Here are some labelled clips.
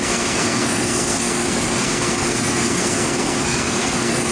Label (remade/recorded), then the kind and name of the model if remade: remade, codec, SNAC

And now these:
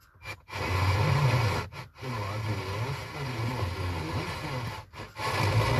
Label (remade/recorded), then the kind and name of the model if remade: recorded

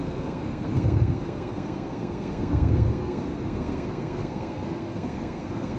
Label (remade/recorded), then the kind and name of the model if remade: remade, codec, SNAC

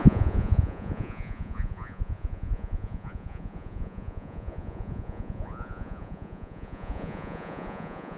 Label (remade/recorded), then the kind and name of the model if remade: remade, vocoder, Vocos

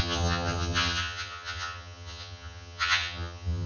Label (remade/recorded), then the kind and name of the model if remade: remade, vocoder, HiFi-GAN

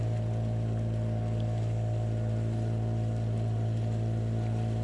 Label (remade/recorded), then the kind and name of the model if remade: recorded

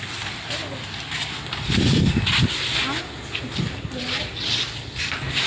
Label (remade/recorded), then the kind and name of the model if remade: recorded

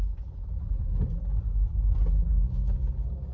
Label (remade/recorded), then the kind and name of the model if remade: recorded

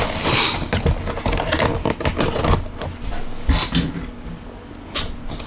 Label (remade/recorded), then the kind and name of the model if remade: recorded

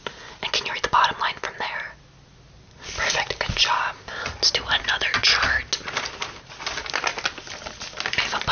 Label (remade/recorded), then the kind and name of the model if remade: recorded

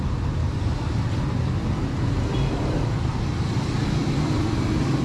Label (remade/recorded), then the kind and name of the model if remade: recorded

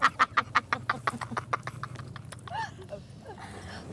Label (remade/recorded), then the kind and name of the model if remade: recorded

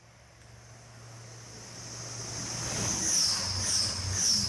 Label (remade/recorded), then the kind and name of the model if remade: recorded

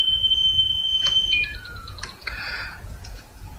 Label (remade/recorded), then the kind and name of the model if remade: remade, vocoder, Vocos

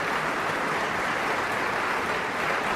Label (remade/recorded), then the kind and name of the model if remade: recorded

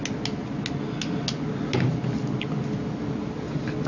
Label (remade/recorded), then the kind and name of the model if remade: recorded